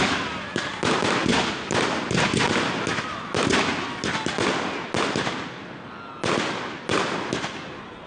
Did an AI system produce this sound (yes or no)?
no